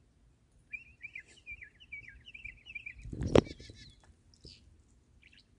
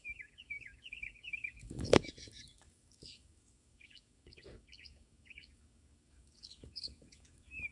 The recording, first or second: first